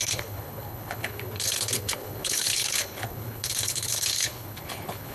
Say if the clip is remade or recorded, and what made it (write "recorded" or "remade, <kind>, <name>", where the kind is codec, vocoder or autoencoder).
remade, codec, HILCodec